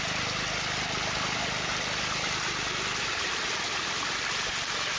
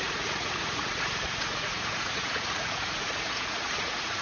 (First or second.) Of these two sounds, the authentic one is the first